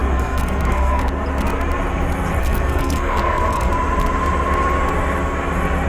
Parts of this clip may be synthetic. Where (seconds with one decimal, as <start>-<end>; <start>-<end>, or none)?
0.0-1.1; 2.4-3.7